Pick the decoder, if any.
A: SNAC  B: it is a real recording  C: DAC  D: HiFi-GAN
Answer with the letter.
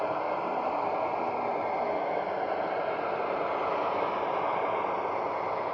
B